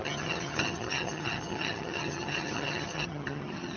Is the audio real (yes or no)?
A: no